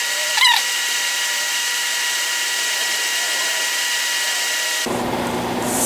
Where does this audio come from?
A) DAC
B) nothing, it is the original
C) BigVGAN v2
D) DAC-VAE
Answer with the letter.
C